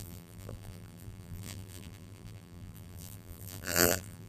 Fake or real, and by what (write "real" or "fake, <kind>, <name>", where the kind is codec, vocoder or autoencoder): fake, vocoder, BigVGAN v2